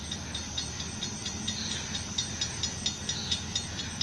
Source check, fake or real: real